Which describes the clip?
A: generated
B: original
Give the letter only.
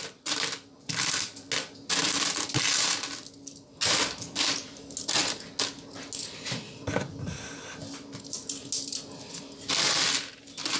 B